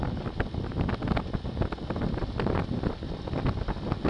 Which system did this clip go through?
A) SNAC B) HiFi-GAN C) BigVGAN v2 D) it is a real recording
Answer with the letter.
D